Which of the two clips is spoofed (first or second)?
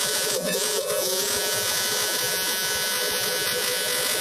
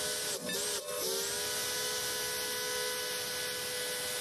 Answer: first